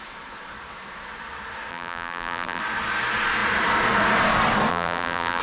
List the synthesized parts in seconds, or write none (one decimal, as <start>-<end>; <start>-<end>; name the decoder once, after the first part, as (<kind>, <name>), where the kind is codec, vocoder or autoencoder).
1.7-2.6 (vocoder, BigVGAN v2); 4.7-5.4